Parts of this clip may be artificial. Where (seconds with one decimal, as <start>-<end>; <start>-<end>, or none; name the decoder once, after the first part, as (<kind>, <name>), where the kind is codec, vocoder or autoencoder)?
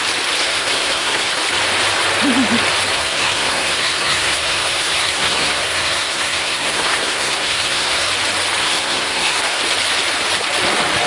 0.4-1.3 (codec, SNAC); 2.9-8.1; 8.6-9.6